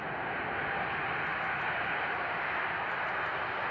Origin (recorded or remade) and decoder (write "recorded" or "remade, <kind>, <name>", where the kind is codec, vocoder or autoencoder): recorded